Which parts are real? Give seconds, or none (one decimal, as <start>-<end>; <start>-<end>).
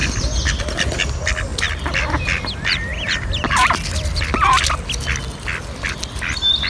0.0-1.5; 2.2-2.9; 4.6-6.7